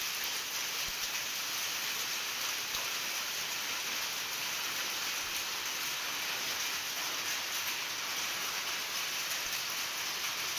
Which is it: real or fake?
real